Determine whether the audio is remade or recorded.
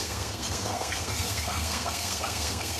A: remade